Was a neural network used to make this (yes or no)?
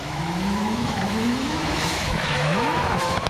yes